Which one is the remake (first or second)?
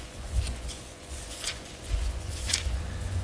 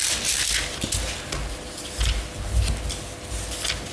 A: first